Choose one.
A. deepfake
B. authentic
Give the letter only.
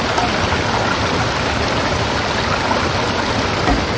B